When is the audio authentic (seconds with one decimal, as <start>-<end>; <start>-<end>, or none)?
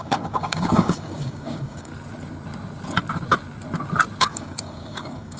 1.9-4.2